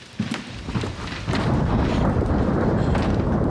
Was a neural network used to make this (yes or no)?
no